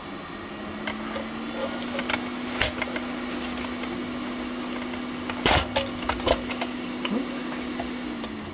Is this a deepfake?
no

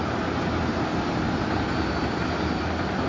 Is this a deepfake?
no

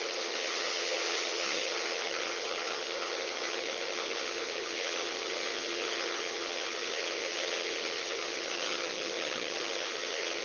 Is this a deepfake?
yes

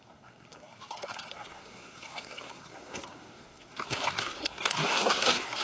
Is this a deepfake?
yes